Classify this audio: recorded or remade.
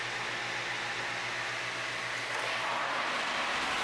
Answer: recorded